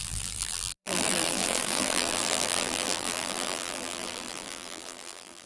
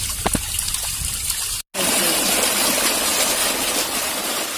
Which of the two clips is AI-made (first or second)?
first